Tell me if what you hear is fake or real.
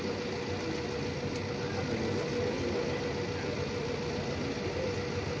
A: real